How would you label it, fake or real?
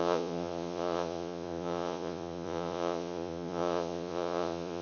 fake